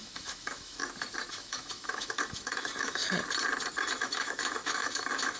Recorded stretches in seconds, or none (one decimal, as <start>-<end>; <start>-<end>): 0.8-1.3; 3.0-3.8